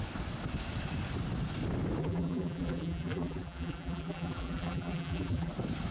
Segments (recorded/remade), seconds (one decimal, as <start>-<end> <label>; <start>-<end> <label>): 0.0-2.0 recorded; 2.0-5.5 remade; 5.5-5.9 recorded

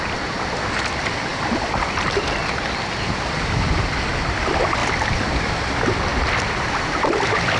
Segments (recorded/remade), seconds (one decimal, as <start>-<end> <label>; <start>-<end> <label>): 0.0-2.4 remade; 2.4-4.0 recorded; 4.0-7.6 remade

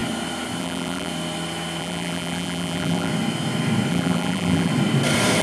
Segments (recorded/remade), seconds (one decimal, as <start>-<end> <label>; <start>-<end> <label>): 0.0-0.6 recorded; 0.6-1.1 remade; 1.1-1.8 recorded; 1.8-3.1 remade; 3.1-3.9 recorded; 3.9-4.7 remade; 4.7-5.4 recorded

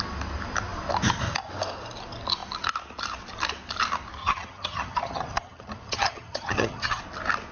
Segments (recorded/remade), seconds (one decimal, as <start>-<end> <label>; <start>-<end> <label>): 0.0-4.2 recorded; 4.2-7.0 remade; 7.0-7.5 recorded

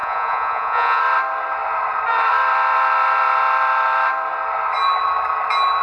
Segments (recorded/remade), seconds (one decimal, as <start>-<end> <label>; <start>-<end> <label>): 0.0-1.0 remade; 1.0-5.8 recorded

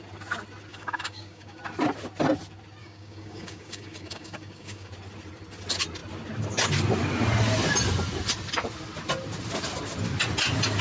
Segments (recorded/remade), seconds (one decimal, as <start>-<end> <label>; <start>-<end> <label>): 0.0-0.7 recorded; 0.7-1.6 remade; 1.6-2.8 recorded; 2.8-4.9 remade; 4.9-10.8 recorded

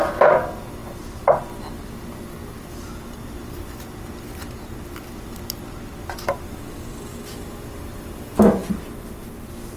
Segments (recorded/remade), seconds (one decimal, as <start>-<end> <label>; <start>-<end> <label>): 0.0-9.8 recorded

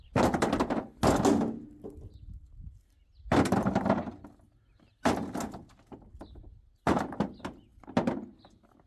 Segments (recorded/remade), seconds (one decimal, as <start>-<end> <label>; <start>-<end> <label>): 0.0-8.9 recorded